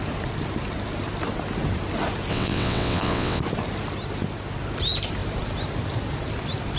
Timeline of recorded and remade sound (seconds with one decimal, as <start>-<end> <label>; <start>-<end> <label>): 0.0-2.3 recorded; 2.3-3.4 remade; 3.4-6.8 recorded